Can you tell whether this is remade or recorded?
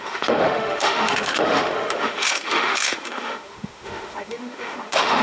remade